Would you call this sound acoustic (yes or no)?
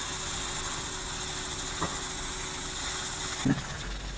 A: yes